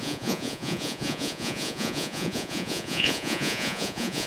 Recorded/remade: remade